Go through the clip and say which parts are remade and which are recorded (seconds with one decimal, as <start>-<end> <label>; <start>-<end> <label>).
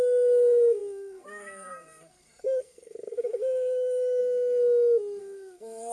0.0-4.2 remade; 4.2-5.2 recorded; 5.2-5.9 remade